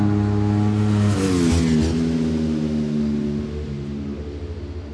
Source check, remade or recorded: recorded